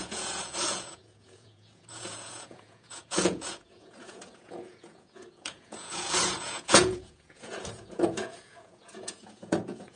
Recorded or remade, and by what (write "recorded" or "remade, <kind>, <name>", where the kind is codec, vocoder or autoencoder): remade, vocoder, Vocos